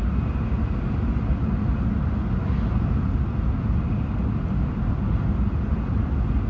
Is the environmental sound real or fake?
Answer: real